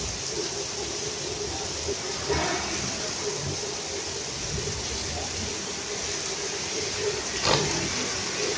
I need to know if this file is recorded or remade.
recorded